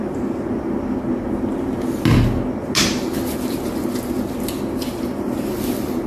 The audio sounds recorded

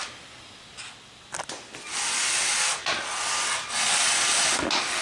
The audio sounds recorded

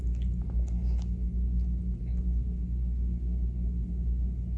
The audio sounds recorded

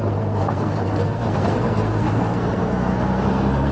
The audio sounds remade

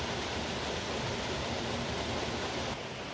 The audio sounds recorded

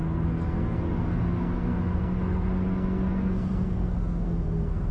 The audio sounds remade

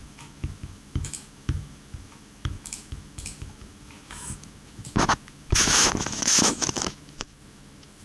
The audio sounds remade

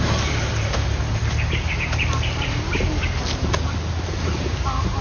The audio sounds recorded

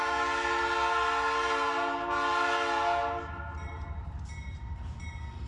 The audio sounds recorded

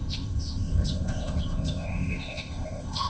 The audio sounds remade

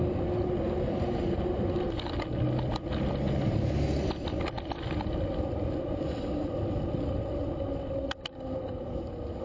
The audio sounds recorded